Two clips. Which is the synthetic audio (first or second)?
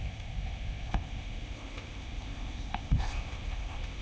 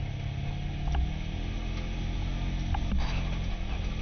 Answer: first